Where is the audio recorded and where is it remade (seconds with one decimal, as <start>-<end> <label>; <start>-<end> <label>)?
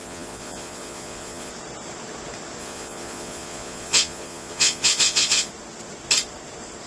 0.0-1.5 remade; 1.5-2.6 recorded; 2.6-5.5 remade; 5.5-6.9 recorded